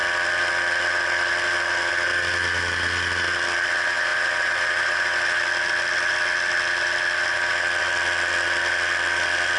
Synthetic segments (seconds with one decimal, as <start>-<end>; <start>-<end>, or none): none

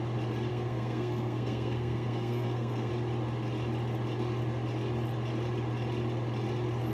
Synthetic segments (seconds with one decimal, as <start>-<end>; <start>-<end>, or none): 0.5-2.9

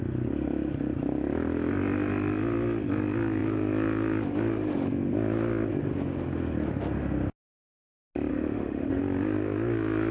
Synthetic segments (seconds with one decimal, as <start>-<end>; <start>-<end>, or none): 8.3-9.0

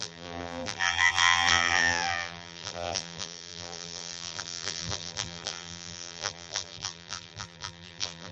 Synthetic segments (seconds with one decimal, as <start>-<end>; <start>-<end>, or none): 0.0-8.3